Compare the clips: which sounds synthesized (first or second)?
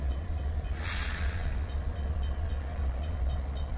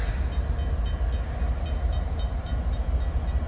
first